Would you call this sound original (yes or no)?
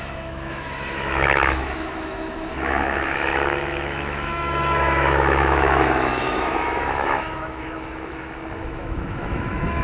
no